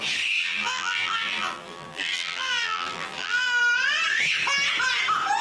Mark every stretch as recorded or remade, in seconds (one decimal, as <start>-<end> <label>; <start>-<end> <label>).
0.0-0.4 recorded; 0.4-3.6 remade; 3.6-5.4 recorded